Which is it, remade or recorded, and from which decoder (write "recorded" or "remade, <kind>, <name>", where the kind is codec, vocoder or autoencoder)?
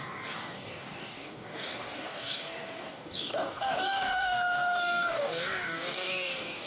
remade, codec, DAC